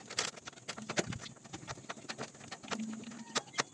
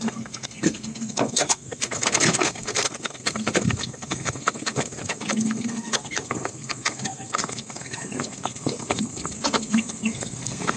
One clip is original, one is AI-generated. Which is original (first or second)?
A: first